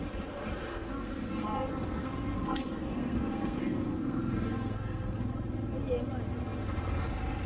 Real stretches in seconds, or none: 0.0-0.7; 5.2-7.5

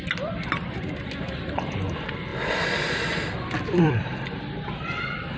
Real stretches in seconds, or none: 0.0-2.3; 3.9-5.4

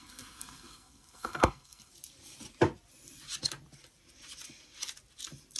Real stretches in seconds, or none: 1.9-5.6

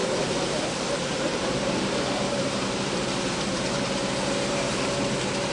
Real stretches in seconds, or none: 0.7-1.3; 4.6-5.5

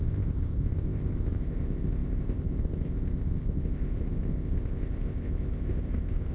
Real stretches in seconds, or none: none

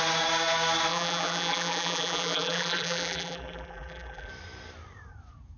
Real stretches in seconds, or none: 0.0-0.9; 4.3-5.6

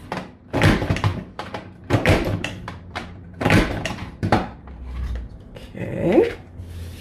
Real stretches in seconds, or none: 0.0-1.1; 5.3-7.0